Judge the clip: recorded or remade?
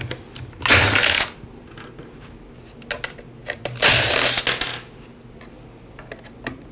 recorded